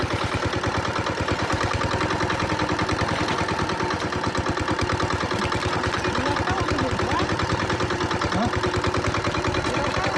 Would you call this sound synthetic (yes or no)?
no